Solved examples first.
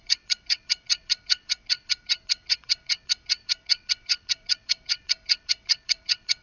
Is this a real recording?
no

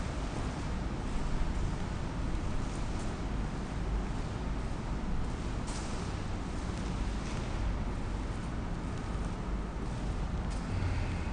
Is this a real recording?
yes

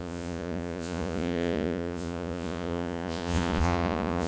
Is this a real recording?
no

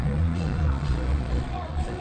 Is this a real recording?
no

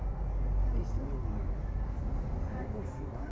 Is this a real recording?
yes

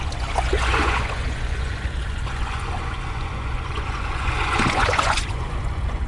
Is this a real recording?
no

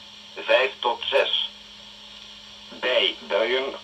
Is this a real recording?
yes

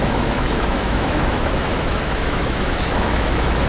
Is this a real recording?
no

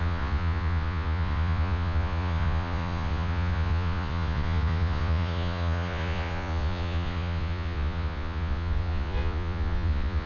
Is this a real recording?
no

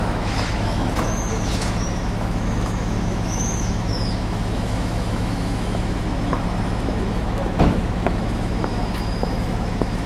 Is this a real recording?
no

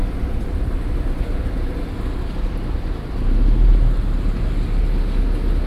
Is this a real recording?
yes